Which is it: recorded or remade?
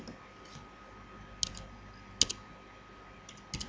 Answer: recorded